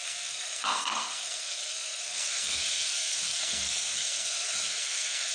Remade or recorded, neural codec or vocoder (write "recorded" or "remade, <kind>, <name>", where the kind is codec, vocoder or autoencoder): remade, codec, SNAC